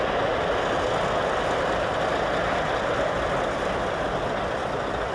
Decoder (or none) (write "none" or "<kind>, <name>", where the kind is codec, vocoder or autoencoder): none